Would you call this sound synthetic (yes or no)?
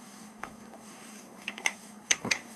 yes